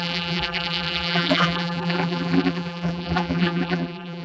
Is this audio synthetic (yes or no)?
yes